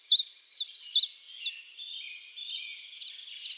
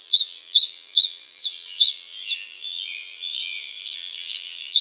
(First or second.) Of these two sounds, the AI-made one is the second